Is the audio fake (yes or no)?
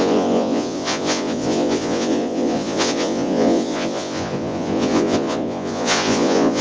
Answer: yes